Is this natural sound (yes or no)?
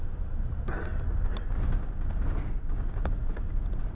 yes